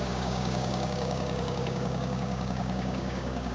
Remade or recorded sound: remade